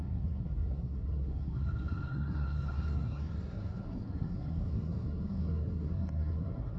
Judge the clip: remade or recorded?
remade